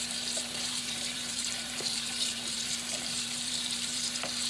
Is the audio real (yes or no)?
no